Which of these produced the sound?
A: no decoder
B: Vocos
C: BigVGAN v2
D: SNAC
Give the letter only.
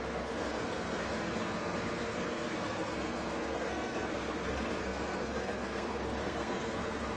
D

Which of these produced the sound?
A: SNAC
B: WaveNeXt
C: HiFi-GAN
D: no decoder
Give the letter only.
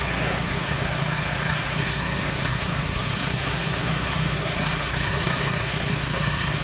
A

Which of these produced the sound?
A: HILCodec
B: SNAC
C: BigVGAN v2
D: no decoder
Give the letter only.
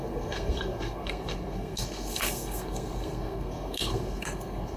B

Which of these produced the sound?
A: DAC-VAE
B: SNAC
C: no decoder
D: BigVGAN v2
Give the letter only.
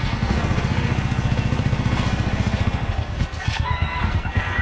B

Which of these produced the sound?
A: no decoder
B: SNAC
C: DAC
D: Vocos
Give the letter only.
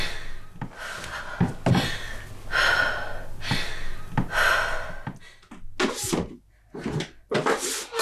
A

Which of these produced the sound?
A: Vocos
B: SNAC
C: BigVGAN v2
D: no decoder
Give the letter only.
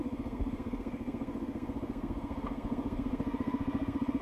B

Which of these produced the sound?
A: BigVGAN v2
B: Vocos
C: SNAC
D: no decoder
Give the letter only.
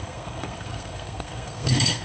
C